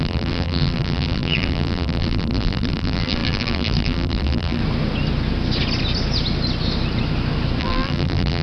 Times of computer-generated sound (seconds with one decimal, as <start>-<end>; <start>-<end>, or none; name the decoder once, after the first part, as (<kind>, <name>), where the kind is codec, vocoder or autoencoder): 0.0-4.6 (vocoder, BigVGAN v2); 7.6-8.4

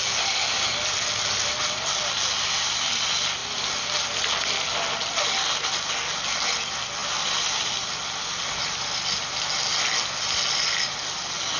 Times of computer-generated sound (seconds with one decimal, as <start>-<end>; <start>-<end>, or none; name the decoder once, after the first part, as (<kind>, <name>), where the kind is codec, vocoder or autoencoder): 3.4-3.9 (vocoder, BigVGAN v2); 7.0-8.4